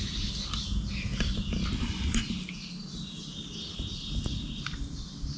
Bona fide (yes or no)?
yes